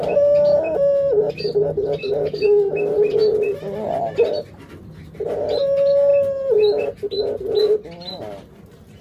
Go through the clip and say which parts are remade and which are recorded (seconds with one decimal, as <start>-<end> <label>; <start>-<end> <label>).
0.0-2.0 recorded; 2.0-2.7 remade; 2.7-9.0 recorded